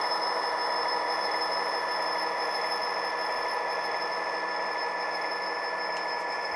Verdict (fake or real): fake